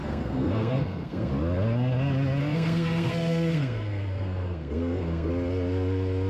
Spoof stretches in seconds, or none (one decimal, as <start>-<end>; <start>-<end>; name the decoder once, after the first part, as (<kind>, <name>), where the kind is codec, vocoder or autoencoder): 0.0-1.3 (codec, SNAC); 2.4-5.3